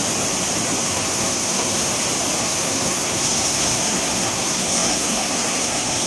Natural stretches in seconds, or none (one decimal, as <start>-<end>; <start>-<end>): 0.0-0.8; 1.9-2.4